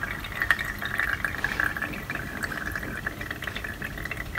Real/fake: fake